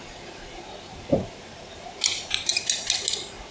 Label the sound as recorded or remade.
recorded